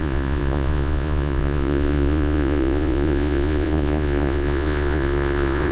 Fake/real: fake